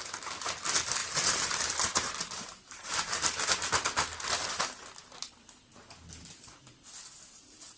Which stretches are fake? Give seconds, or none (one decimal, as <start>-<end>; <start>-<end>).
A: 1.0-2.9